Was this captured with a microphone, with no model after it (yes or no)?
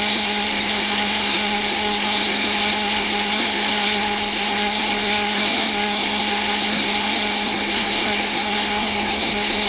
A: no